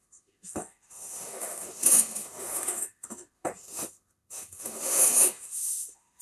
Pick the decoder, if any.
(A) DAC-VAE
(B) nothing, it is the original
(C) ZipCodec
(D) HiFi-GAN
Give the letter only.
A